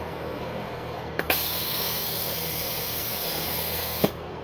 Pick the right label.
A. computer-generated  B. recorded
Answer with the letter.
A